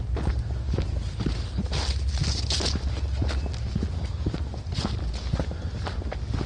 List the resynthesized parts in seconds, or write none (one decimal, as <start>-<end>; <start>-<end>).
none